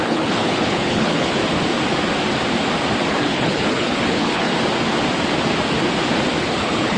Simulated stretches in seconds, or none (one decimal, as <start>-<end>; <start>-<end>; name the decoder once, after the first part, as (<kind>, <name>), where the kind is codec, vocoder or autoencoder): 0.0-1.4 (codec, HILCodec); 3.1-4.5; 6.4-7.0